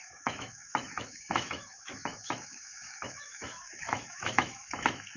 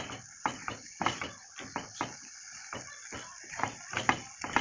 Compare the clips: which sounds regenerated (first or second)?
first